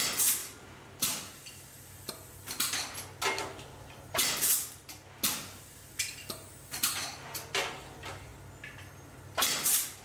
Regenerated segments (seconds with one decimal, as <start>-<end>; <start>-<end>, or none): 0.4-2.1